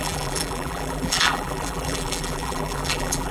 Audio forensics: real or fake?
fake